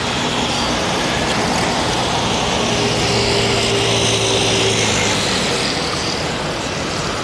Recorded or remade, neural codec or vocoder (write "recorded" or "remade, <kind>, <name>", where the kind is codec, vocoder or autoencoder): recorded